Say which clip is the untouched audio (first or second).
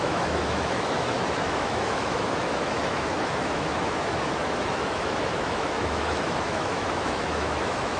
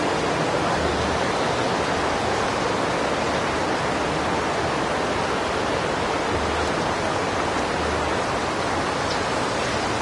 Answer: second